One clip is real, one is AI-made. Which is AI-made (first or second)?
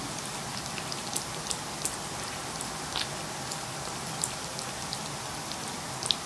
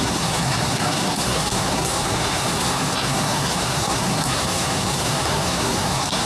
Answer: second